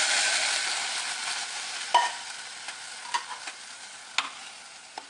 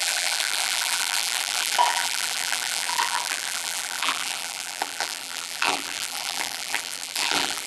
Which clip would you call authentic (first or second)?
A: first